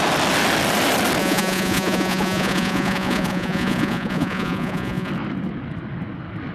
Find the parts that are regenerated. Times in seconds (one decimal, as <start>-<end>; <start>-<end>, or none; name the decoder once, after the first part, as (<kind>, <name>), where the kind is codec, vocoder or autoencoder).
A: 1.2-5.1 (vocoder, Vocos)